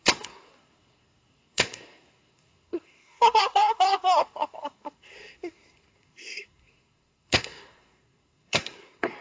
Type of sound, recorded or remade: remade